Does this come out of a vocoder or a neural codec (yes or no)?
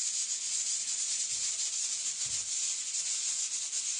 no